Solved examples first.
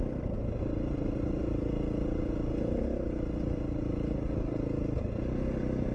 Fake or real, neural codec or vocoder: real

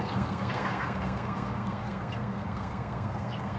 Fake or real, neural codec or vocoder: fake, codec, SNAC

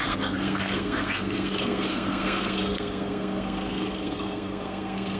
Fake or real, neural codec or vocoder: fake, codec, SNAC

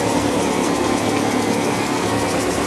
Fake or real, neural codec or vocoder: fake, codec, SNAC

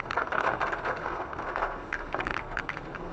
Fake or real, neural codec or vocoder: fake, codec, SNAC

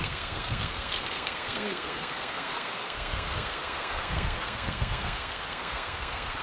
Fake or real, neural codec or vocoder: fake, codec, SNAC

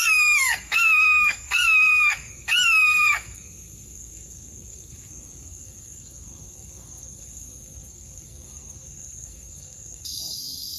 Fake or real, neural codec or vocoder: fake, codec, SNAC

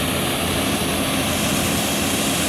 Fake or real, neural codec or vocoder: real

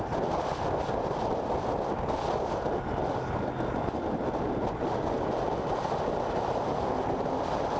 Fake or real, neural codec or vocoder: real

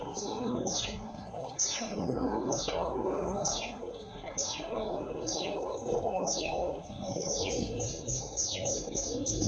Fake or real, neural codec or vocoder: fake, codec, SNAC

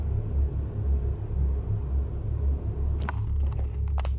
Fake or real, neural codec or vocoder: real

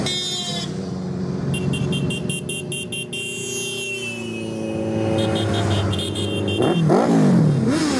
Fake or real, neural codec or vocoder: real